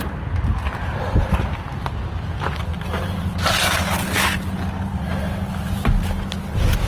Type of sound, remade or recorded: recorded